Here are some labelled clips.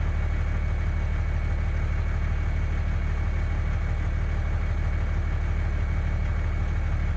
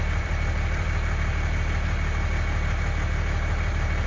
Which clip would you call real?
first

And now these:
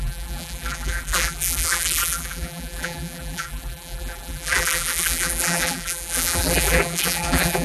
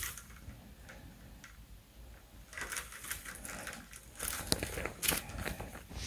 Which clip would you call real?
second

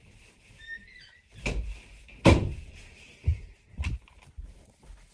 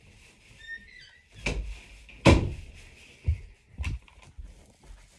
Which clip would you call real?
second